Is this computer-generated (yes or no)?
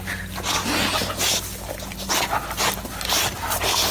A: no